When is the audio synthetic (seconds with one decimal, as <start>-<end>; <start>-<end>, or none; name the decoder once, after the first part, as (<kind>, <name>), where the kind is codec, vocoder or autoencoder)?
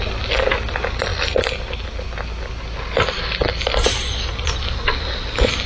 none